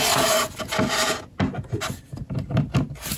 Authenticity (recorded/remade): recorded